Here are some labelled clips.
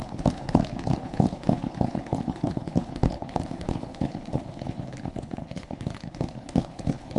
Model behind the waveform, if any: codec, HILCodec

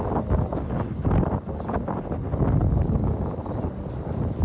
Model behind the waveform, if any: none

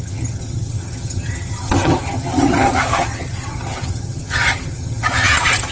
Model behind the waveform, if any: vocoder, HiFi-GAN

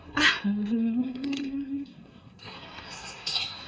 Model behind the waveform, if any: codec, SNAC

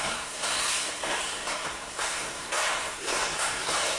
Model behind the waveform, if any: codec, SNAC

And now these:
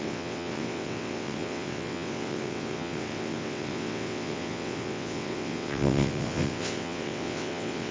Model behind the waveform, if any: vocoder, WaveNeXt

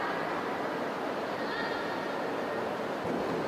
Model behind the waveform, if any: none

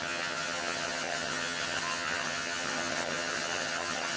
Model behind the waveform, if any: vocoder, HiFi-GAN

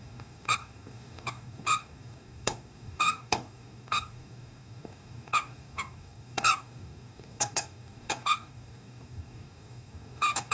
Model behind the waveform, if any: codec, DAC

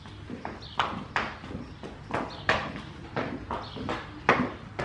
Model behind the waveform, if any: none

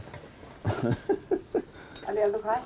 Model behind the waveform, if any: none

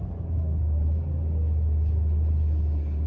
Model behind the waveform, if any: none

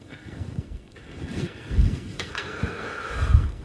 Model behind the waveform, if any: codec, SNAC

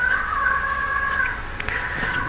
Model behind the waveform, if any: vocoder, WaveNeXt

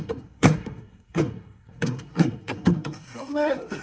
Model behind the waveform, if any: codec, SNAC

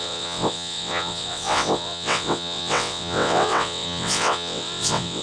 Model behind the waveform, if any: vocoder, WaveNeXt